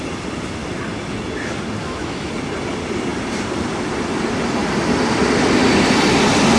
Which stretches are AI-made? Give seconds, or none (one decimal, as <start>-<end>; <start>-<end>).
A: 1.8-2.3